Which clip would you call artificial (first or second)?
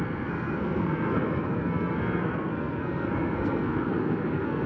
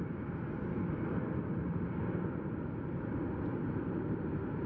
first